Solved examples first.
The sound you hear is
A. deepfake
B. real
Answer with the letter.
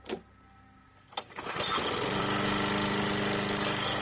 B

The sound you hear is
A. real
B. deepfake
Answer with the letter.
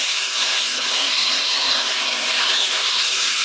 B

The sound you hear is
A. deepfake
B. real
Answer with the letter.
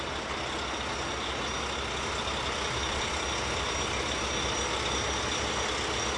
B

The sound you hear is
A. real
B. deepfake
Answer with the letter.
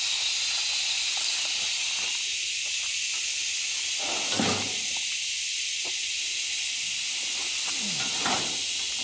A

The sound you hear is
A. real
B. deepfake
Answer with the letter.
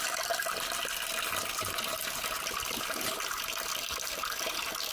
A